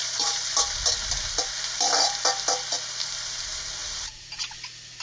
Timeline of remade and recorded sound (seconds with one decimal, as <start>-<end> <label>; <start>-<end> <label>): 0.0-0.5 remade; 0.5-3.8 recorded; 3.8-4.4 remade; 4.4-5.0 recorded